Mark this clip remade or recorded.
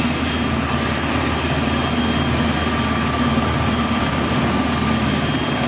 recorded